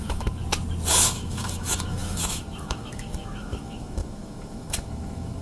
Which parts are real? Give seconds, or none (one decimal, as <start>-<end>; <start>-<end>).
0.4-0.9